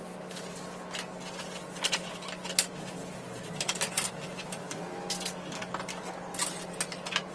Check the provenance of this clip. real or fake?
real